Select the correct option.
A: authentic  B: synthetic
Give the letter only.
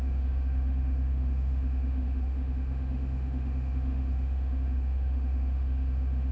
B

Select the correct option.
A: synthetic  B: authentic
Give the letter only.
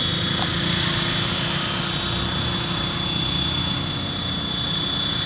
B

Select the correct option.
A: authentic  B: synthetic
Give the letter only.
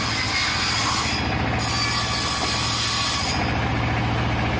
A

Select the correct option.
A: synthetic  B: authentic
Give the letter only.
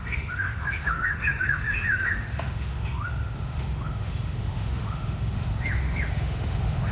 A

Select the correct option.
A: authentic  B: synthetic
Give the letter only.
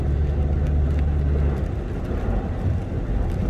A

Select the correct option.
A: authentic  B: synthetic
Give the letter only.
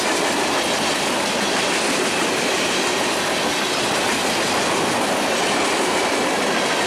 A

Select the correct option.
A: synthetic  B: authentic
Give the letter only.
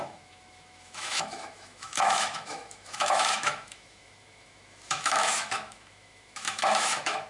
A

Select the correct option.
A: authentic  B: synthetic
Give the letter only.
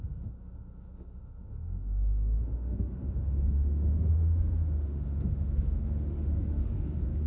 B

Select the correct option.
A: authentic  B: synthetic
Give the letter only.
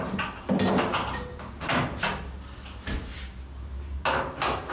A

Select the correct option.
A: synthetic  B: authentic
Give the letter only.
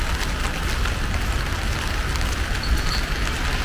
B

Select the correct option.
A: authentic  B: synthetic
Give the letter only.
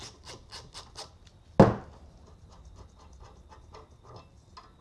A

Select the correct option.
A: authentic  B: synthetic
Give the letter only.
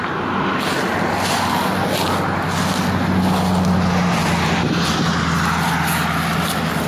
A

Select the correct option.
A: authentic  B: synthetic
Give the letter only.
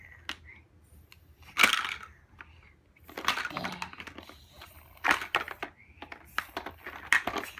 A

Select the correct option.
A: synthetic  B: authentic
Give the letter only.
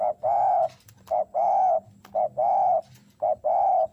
B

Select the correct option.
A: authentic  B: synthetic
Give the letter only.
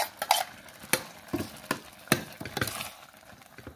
A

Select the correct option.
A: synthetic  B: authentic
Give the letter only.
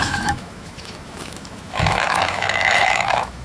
A